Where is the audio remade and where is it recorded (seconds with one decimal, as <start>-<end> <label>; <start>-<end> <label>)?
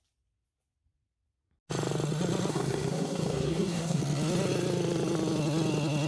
0.0-2.5 recorded; 2.5-4.0 remade; 4.0-6.1 recorded